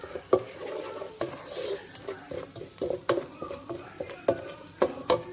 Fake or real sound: real